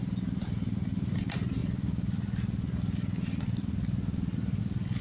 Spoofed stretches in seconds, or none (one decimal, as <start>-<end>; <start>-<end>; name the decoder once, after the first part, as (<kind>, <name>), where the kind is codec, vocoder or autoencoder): 0.0-1.2 (vocoder, BigVGAN v2)